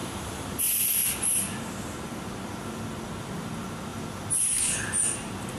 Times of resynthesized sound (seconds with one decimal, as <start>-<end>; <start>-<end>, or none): none